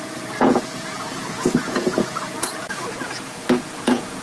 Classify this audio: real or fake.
fake